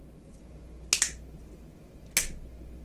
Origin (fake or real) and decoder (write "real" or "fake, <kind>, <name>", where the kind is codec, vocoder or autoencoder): real